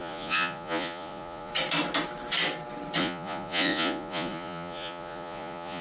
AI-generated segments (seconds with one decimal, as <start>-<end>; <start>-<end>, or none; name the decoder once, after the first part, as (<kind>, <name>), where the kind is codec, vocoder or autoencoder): 0.0-1.5 (vocoder, Vocos); 3.0-5.8